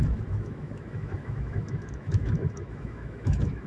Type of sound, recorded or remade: remade